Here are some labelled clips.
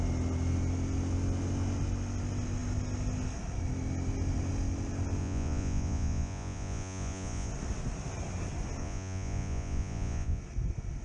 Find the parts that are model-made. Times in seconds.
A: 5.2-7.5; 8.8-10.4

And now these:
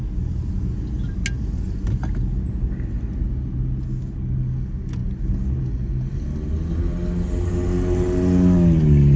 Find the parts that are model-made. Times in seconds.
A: none

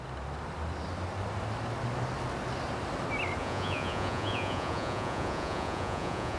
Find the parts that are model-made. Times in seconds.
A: 3.4-6.4

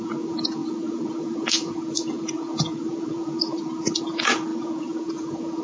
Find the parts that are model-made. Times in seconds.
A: 0.0-5.6